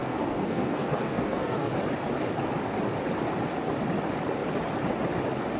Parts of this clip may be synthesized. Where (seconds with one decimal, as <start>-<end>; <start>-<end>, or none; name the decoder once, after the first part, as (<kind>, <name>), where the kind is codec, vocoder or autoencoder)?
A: 0.0-1.7 (codec, SNAC)